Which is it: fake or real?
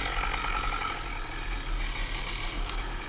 real